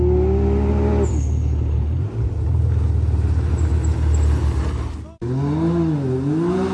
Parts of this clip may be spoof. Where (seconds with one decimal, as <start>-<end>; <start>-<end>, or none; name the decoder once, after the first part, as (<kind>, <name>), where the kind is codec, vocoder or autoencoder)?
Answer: 1.1-2.0 (codec, HILCodec)